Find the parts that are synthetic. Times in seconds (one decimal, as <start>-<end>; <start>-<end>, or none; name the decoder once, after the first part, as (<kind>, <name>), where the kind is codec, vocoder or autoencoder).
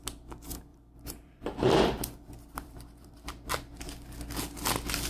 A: 0.7-3.8 (vocoder, BigVGAN v2)